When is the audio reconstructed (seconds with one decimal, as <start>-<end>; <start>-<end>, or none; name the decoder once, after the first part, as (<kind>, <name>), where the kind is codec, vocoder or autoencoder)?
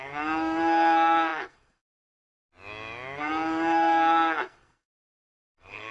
0.0-2.4 (codec, SNAC); 3.2-5.9